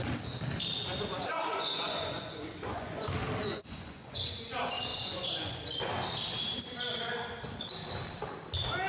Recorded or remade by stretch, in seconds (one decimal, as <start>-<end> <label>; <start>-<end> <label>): 0.0-1.3 recorded; 1.3-3.1 remade; 3.1-3.5 recorded; 3.5-4.3 remade; 4.3-4.9 recorded; 4.9-5.5 remade; 5.5-8.9 recorded